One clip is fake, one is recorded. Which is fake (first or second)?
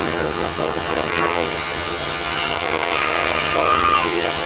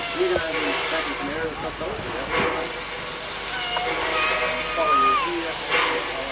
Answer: first